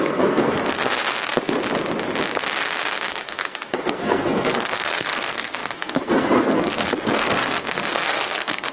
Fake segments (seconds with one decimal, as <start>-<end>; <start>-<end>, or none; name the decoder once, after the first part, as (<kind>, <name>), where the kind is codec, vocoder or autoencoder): 0.0-1.0 (codec, SNAC); 3.1-8.7